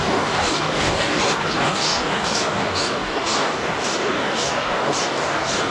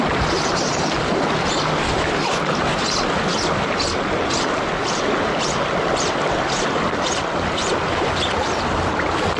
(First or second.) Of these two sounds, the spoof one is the first